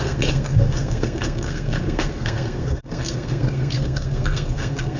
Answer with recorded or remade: remade